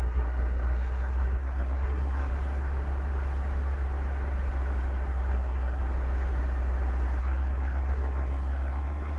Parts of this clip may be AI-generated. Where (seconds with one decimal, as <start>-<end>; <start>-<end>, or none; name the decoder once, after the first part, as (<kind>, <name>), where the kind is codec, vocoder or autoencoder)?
0.0-2.3 (codec, SNAC); 5.3-5.8; 7.2-9.2